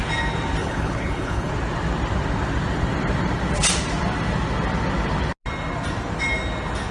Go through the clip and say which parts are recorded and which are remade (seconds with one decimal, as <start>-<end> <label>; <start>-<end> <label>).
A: 0.0-0.6 recorded; 0.6-1.5 remade; 1.5-6.9 recorded